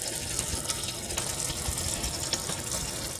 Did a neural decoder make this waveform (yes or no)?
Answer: no